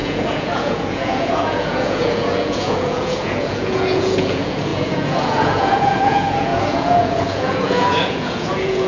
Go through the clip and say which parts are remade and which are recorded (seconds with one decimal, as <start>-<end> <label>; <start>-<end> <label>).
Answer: 0.0-8.9 remade